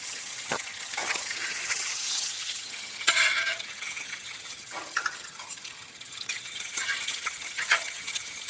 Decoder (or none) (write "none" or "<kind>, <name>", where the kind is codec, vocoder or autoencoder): vocoder, HiFi-GAN